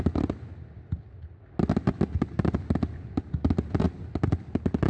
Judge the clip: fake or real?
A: real